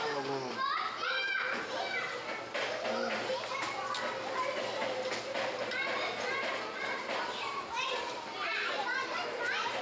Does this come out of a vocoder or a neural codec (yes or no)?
no